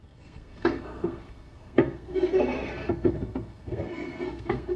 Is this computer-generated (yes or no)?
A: yes